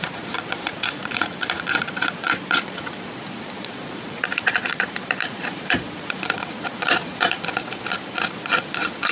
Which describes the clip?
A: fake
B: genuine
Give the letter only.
A